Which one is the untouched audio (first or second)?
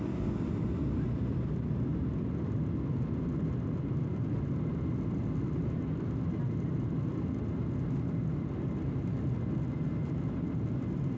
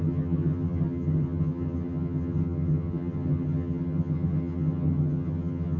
first